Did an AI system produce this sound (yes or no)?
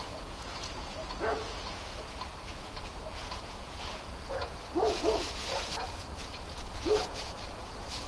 yes